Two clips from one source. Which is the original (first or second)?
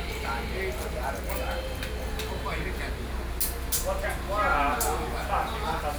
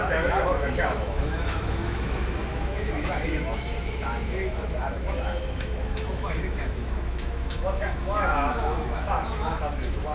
first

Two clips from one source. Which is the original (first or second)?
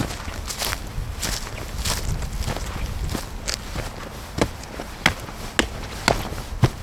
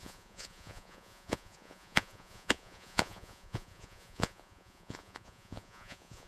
first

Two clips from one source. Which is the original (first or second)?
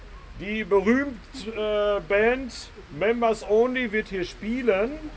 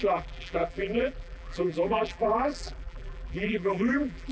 first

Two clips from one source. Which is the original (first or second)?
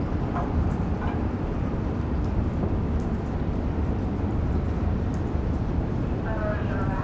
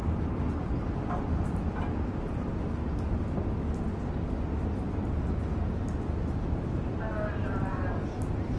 second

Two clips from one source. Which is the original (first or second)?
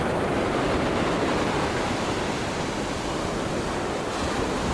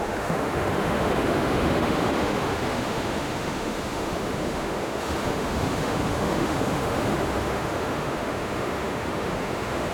first